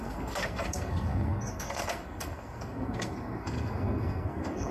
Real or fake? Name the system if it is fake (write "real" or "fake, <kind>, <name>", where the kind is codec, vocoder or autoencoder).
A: fake, codec, SNAC